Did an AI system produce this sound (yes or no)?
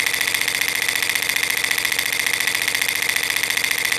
no